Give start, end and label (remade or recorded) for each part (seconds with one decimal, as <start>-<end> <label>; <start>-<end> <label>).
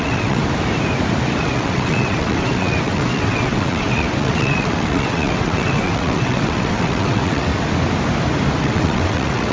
0.0-0.4 remade; 0.4-1.4 recorded; 1.4-7.5 remade; 7.5-8.6 recorded; 8.6-9.5 remade